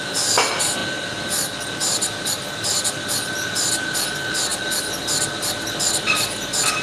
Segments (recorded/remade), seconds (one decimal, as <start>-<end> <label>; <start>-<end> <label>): 0.0-6.8 recorded

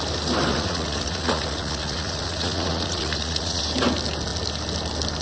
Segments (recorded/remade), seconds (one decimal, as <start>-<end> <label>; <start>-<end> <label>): 0.0-0.5 recorded; 0.5-3.6 remade; 3.6-5.2 recorded

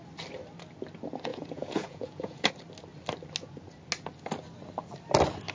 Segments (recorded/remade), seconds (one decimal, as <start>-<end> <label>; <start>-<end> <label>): 0.0-1.3 recorded; 1.3-2.5 remade; 2.5-5.5 recorded

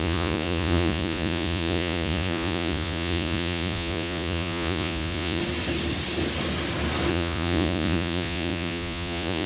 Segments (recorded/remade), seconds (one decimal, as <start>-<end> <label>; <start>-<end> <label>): 0.0-5.4 remade; 5.4-7.1 recorded; 7.1-9.5 remade

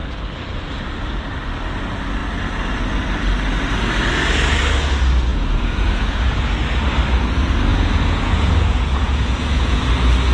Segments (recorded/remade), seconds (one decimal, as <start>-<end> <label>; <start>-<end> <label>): 0.0-5.3 recorded; 5.3-6.5 remade; 6.5-7.7 recorded; 7.7-9.8 remade; 9.8-10.3 recorded

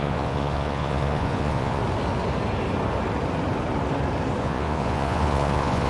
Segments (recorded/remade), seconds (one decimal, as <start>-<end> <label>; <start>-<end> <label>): 0.0-1.8 remade; 1.8-4.4 recorded; 4.4-5.9 remade

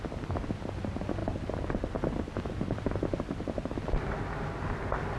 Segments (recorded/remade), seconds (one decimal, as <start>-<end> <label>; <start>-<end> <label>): 0.0-5.2 recorded